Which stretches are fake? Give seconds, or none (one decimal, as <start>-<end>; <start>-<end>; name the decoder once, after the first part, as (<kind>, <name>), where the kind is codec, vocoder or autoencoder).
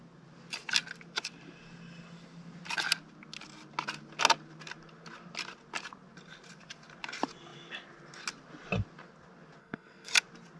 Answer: 9.6-10.1 (codec, SNAC)